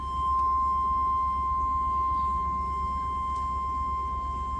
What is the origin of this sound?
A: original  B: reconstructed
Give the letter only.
A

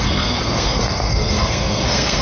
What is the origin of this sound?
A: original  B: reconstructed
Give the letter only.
B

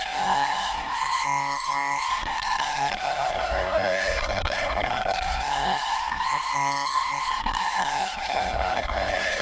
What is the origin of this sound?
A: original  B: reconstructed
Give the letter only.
B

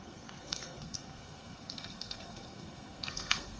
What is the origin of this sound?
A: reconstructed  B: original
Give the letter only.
A